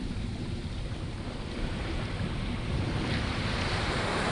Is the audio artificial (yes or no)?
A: yes